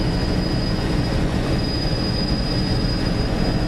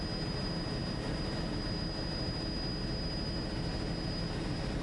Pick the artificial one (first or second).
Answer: first